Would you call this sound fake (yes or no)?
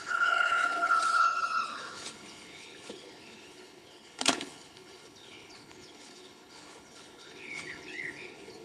yes